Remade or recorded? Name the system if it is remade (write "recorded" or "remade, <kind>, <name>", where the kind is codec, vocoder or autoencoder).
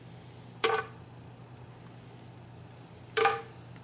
recorded